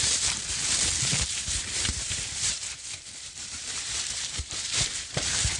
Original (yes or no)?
no